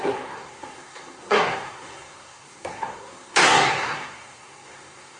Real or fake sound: fake